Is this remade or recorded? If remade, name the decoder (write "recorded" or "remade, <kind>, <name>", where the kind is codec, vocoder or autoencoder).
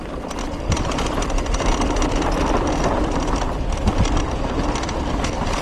recorded